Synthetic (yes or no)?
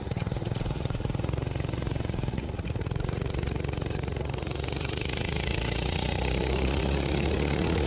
yes